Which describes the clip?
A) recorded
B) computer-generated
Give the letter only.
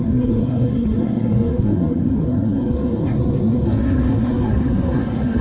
B